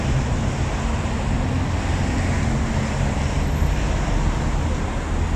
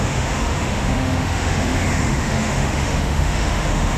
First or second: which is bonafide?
first